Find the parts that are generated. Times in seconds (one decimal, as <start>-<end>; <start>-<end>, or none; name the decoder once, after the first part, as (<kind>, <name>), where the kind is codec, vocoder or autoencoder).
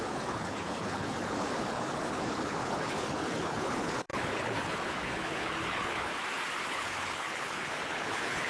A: 0.0-6.1 (codec, HILCodec); 6.7-8.5